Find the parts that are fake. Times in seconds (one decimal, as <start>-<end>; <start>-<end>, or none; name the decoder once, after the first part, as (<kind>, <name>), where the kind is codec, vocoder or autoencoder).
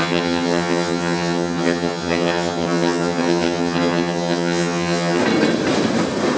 0.0-5.2 (vocoder, HiFi-GAN)